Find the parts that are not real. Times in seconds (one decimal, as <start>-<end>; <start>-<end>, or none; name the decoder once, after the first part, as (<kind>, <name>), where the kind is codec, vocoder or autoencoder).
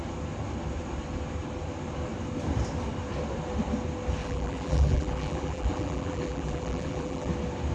4.2-7.3 (vocoder, BigVGAN v2)